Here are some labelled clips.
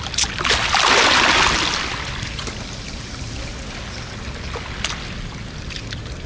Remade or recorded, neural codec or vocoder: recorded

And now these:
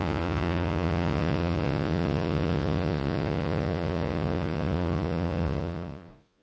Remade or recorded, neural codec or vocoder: remade, vocoder, Vocos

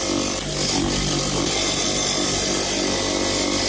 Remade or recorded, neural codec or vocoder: recorded